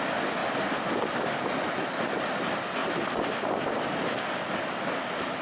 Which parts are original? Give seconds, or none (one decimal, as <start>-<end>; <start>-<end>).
0.0-5.4